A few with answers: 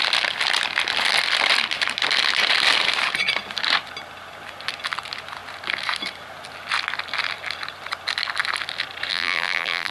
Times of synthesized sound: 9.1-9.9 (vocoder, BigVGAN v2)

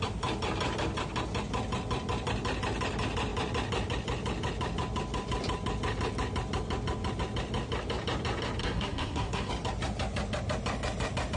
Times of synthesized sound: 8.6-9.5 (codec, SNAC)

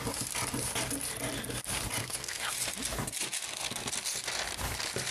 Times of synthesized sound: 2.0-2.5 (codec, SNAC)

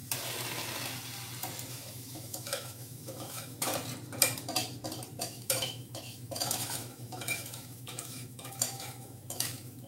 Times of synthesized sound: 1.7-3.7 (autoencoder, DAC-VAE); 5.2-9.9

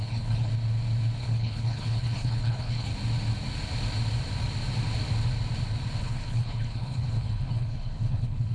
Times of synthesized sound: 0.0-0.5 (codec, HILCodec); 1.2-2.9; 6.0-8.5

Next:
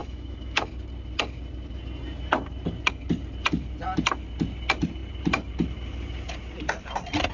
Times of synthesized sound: 0.0-0.7 (autoencoder, DAC-VAE)

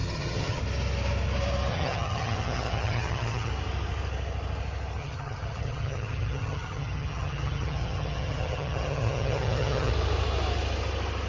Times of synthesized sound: 0.0-0.6 (vocoder, HiFi-GAN); 1.7-3.5; 5.0-9.9